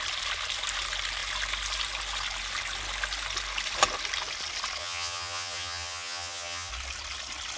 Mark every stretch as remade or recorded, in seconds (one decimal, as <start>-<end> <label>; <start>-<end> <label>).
0.0-4.8 recorded; 4.8-6.7 remade; 6.7-7.6 recorded